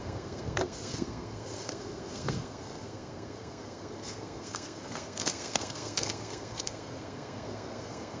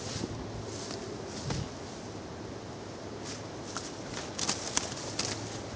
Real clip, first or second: second